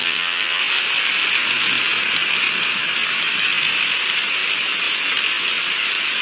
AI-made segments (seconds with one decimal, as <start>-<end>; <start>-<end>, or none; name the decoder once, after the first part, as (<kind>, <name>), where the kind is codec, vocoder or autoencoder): 0.0-0.6 (vocoder, HiFi-GAN)